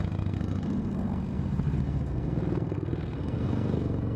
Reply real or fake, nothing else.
fake